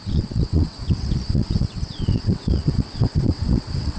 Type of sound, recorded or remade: remade